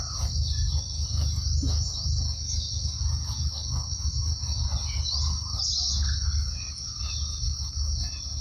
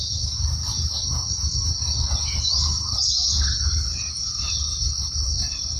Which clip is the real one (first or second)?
first